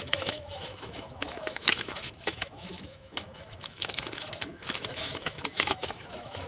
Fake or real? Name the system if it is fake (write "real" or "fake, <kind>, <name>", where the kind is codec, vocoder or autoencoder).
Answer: fake, autoencoder, DAC-VAE